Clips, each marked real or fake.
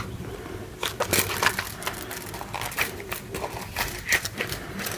fake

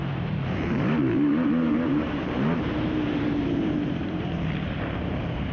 fake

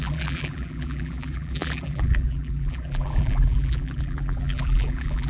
fake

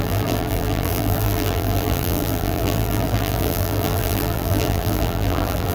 fake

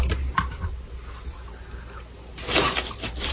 real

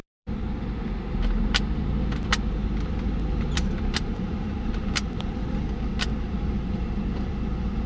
fake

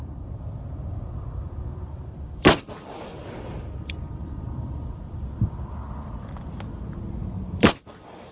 fake